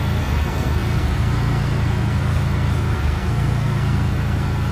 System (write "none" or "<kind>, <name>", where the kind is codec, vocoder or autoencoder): codec, SNAC